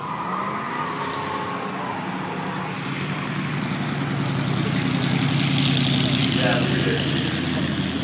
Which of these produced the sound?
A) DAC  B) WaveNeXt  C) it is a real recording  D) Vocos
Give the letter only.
C